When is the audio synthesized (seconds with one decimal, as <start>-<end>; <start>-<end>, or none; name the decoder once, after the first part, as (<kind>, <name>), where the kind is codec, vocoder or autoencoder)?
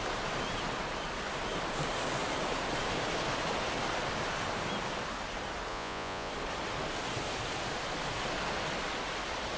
5.7-6.3 (vocoder, Vocos)